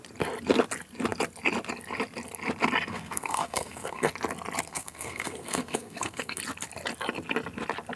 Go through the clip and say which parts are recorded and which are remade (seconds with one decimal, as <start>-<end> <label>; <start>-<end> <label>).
0.0-2.9 recorded; 2.9-4.1 remade; 4.1-4.7 recorded; 4.7-6.4 remade; 6.4-8.0 recorded